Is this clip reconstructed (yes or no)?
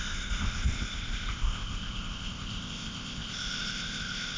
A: yes